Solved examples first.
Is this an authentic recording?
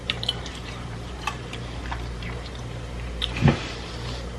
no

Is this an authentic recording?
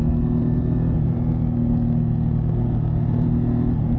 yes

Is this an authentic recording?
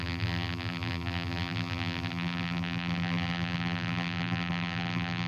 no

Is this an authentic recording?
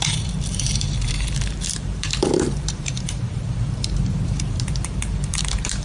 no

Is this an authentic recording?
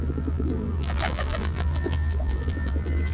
no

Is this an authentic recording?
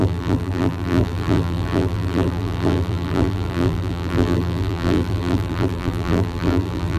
no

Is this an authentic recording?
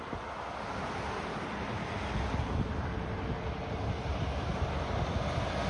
yes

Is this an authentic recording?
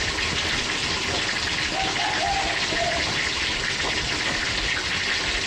yes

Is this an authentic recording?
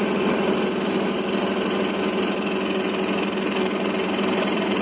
no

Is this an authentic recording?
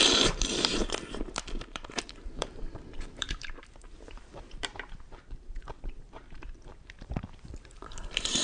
no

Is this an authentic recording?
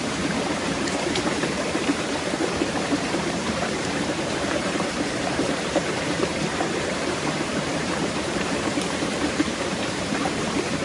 no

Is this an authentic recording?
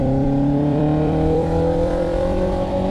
no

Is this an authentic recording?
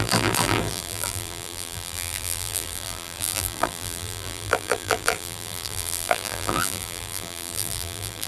no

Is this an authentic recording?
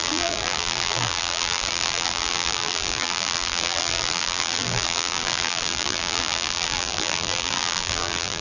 no